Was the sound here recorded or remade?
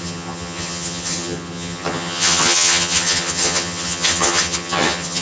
remade